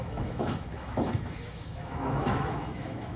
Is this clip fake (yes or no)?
yes